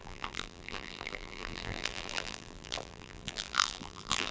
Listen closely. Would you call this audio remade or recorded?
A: remade